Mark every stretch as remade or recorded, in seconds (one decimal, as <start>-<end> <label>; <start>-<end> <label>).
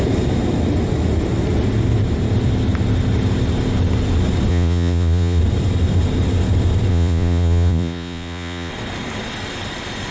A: 0.0-4.5 recorded; 4.5-5.4 remade; 5.4-6.9 recorded; 6.9-8.7 remade; 8.7-10.1 recorded